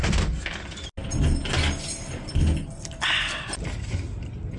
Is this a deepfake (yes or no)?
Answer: no